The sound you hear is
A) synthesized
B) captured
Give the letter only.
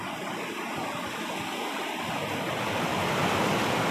B